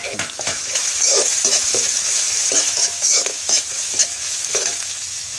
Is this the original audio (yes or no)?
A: no